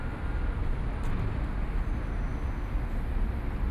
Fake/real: real